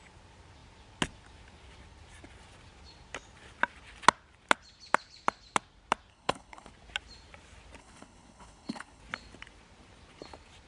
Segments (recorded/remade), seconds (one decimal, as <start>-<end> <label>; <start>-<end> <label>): 0.0-6.1 recorded; 6.1-6.7 remade; 6.7-7.8 recorded; 7.8-9.0 remade; 9.0-10.7 recorded